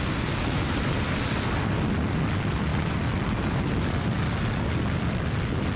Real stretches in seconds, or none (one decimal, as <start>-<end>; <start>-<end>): 0.0-5.8